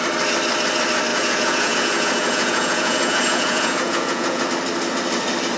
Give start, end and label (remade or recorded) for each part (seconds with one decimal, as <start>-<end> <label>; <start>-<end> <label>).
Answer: 0.0-1.1 recorded; 1.1-4.5 remade; 4.5-5.6 recorded